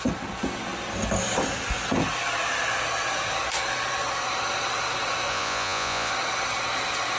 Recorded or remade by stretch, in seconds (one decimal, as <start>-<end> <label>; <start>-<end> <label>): 0.0-5.3 recorded; 5.3-6.1 remade; 6.1-7.2 recorded